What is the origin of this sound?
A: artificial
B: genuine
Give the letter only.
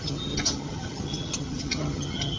A